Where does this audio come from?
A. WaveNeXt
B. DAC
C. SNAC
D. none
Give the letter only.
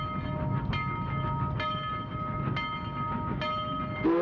D